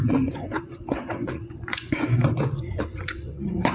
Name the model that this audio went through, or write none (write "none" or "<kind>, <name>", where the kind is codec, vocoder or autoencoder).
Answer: vocoder, Vocos